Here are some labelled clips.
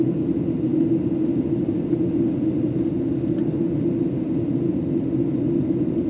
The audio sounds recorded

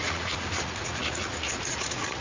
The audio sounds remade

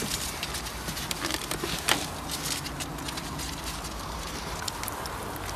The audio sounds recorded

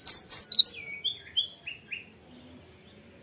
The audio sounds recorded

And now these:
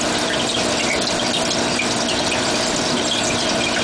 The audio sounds recorded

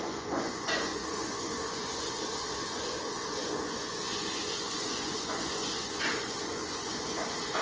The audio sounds remade